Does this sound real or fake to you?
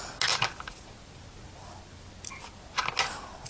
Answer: real